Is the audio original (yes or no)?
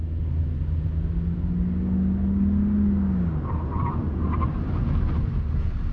yes